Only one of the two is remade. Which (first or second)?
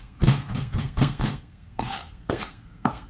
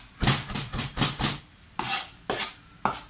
first